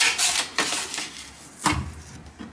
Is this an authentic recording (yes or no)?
yes